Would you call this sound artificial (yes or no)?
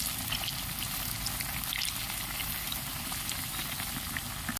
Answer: no